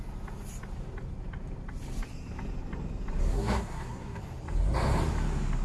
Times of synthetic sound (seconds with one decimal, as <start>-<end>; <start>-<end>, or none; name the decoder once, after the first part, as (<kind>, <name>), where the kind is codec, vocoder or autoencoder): 3.3-4.2 (codec, SNAC)